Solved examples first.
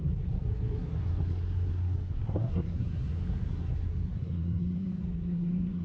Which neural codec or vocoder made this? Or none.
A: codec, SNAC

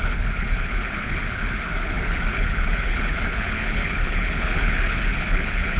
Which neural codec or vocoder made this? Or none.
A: codec, HILCodec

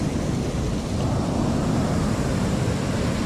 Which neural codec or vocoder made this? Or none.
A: none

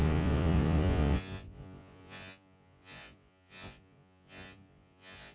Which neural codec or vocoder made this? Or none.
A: vocoder, Vocos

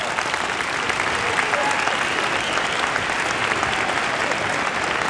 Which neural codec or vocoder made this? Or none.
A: none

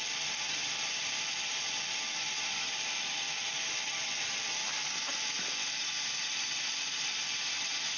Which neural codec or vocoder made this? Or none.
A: vocoder, BigVGAN v2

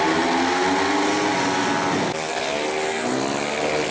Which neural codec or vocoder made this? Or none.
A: none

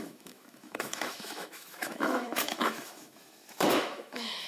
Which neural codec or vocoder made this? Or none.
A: autoencoder, DAC-VAE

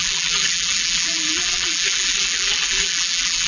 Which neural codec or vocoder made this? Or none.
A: vocoder, BigVGAN v2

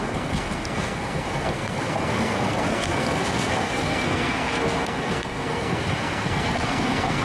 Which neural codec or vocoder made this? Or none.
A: codec, SNAC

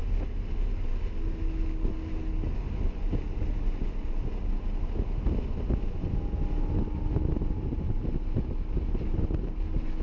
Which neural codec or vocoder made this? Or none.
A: none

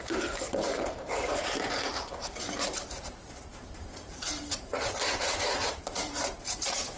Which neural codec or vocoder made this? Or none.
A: vocoder, BigVGAN v2